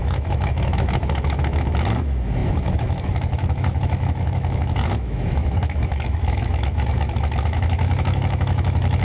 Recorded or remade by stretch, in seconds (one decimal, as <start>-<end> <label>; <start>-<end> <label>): 0.0-9.0 remade